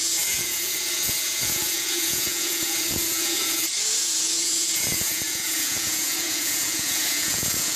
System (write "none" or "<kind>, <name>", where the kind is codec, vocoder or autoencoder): vocoder, Vocos